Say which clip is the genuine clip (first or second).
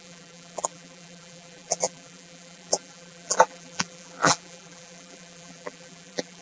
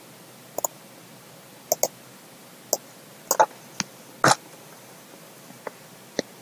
second